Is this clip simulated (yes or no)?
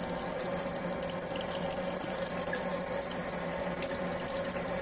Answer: no